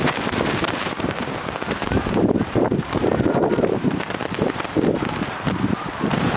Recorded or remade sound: remade